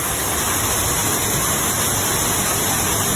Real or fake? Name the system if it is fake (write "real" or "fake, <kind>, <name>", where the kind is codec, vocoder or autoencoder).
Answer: real